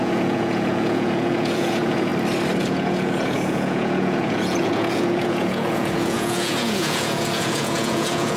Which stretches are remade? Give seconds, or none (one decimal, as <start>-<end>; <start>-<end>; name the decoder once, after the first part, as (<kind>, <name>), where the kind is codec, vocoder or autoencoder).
0.0-2.1 (vocoder, Vocos); 2.6-8.4